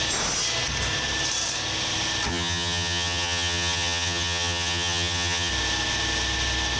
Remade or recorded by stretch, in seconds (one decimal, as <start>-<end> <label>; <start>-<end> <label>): 0.0-2.3 recorded; 2.3-5.5 remade; 5.5-6.8 recorded